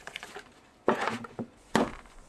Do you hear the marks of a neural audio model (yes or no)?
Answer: yes